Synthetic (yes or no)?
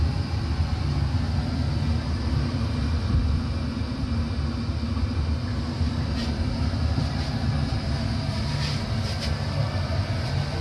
no